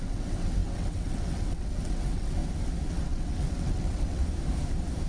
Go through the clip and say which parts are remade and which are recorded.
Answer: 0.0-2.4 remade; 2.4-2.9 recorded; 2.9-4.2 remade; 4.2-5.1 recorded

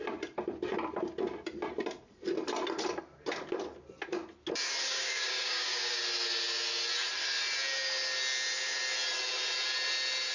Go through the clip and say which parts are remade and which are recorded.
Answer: 0.0-4.9 recorded; 4.9-6.0 remade; 6.0-10.3 recorded